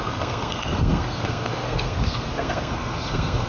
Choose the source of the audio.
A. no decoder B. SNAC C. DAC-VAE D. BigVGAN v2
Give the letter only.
B